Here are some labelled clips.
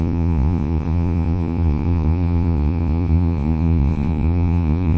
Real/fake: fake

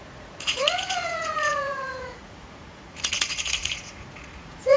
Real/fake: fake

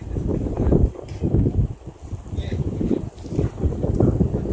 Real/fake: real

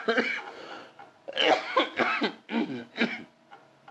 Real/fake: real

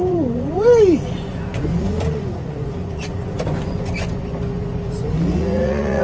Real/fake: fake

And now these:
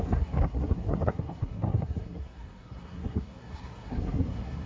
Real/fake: fake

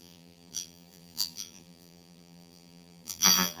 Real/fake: fake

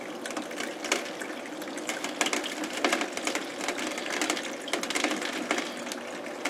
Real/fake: real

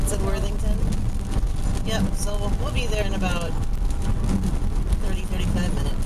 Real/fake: real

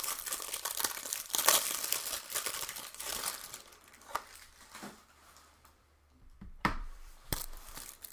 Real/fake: fake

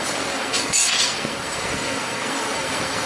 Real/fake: fake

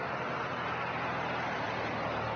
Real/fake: real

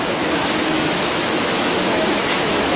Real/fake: fake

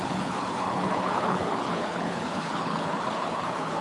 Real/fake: fake